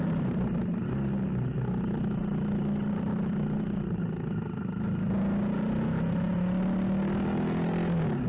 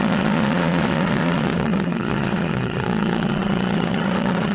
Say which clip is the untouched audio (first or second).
first